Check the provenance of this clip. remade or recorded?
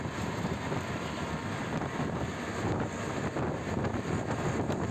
remade